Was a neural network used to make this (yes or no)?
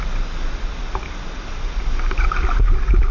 no